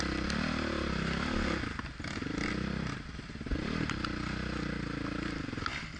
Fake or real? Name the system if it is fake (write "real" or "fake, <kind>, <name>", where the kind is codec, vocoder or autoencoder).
real